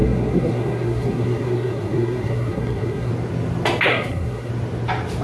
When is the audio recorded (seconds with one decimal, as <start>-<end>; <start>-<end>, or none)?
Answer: 3.1-3.9; 4.5-5.2